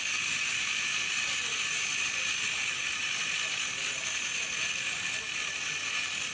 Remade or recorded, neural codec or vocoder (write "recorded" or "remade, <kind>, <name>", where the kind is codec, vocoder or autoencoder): recorded